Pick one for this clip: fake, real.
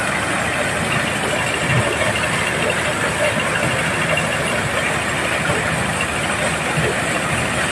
real